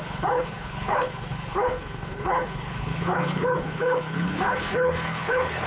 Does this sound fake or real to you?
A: fake